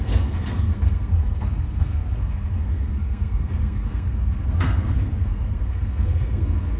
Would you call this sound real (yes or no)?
no